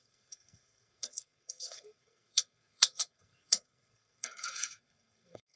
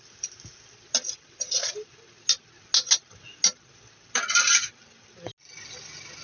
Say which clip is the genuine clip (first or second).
second